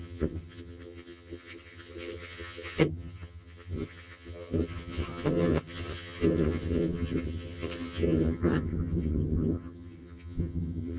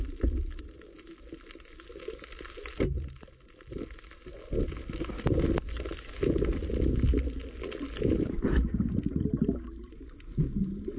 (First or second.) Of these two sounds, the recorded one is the second